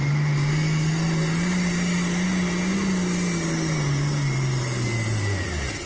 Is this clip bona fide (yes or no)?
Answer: yes